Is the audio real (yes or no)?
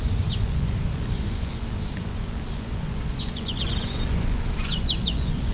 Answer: no